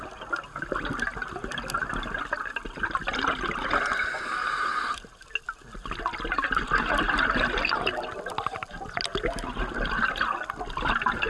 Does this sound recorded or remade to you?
recorded